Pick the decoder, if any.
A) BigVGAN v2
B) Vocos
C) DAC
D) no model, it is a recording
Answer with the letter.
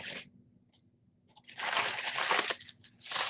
D